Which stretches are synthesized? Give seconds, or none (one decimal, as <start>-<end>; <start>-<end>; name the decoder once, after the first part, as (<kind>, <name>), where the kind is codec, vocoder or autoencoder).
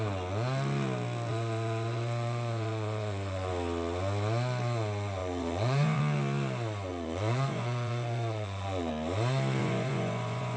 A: 1.3-3.5 (vocoder, Vocos); 5.2-6.0; 6.9-8.9; 9.6-10.6